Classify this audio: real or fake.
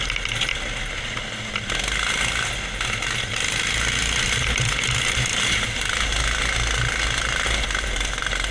real